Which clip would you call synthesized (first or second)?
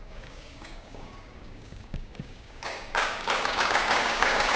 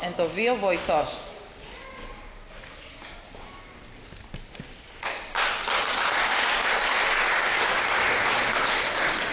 first